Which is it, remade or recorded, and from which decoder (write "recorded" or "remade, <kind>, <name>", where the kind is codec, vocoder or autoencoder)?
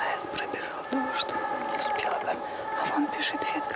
recorded